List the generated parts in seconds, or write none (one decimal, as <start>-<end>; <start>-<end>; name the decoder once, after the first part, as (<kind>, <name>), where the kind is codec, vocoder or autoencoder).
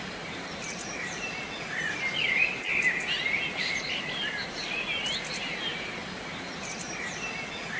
none